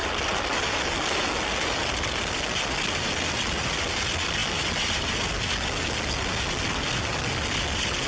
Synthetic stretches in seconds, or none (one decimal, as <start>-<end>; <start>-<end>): none